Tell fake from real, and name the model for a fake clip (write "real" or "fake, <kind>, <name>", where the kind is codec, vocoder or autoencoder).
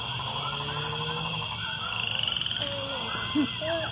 real